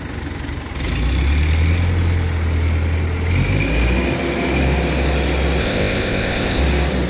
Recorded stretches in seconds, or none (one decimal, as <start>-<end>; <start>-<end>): 0.0-5.6; 6.6-7.1